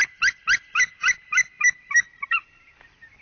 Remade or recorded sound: recorded